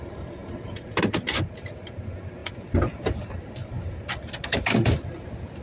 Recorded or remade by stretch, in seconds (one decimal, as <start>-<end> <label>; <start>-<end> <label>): 0.0-5.6 recorded